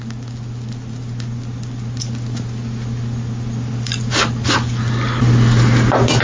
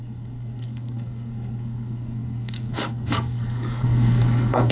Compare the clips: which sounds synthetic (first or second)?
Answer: second